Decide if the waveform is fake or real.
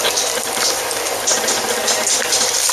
real